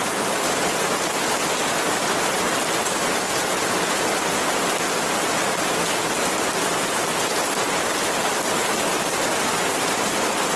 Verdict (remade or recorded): recorded